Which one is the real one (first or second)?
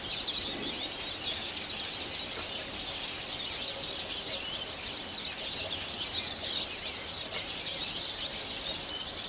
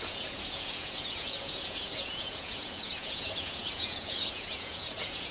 first